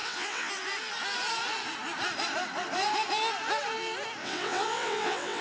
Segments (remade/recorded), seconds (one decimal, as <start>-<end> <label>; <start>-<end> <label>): 0.0-0.5 remade; 0.5-4.2 recorded; 4.2-5.4 remade